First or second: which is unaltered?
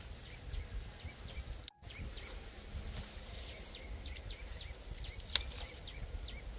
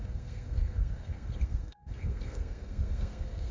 first